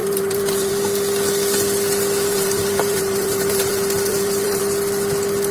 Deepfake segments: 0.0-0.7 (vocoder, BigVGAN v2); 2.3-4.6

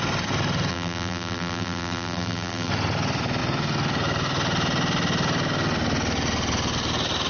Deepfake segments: 0.7-2.7 (vocoder, BigVGAN v2)

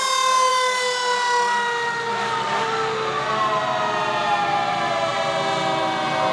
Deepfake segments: none

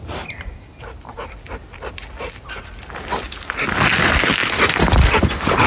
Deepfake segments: 4.4-5.1 (vocoder, BigVGAN v2)

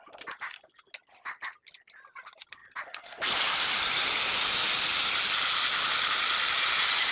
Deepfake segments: 2.6-4.1 (vocoder, BigVGAN v2)